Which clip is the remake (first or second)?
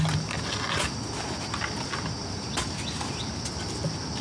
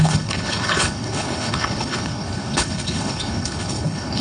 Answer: second